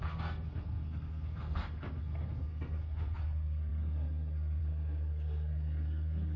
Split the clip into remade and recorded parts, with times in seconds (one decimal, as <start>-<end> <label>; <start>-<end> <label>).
0.0-6.4 remade